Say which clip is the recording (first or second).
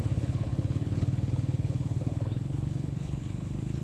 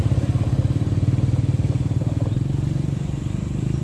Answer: second